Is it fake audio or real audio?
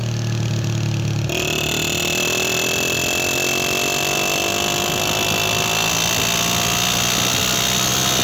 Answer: real